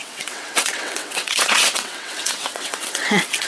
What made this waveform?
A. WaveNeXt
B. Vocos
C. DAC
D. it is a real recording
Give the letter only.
A